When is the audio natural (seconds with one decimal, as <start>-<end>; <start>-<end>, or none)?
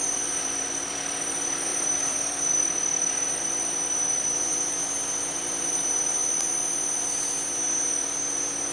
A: 6.2-8.7